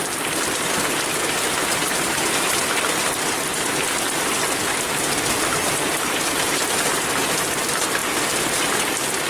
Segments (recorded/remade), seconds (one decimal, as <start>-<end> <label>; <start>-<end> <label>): 0.0-9.3 recorded